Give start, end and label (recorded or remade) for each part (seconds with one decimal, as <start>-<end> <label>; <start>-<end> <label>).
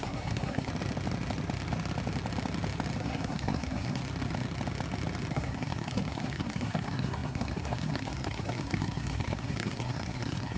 0.0-0.7 remade; 0.7-3.0 recorded; 3.0-4.0 remade; 4.0-5.3 recorded; 5.3-10.6 remade